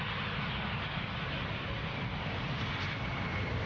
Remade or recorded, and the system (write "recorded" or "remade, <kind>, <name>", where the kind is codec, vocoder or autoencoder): recorded